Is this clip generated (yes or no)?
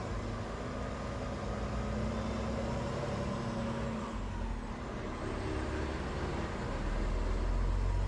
no